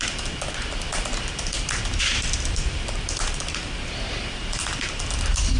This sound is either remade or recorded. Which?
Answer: remade